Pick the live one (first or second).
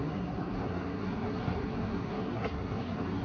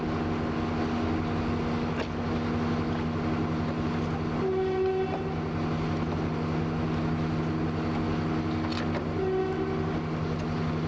second